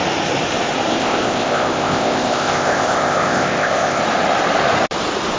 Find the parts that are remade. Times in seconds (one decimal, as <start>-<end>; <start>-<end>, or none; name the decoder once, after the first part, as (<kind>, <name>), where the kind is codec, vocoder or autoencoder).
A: 0.9-4.0 (codec, ZipCodec)